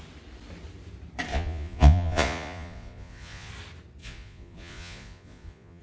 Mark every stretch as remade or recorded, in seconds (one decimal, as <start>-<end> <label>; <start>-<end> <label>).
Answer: 0.0-1.3 recorded; 1.3-3.5 remade; 3.5-4.0 recorded; 4.0-5.8 remade